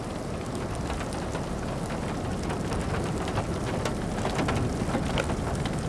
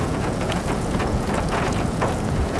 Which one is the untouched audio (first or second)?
first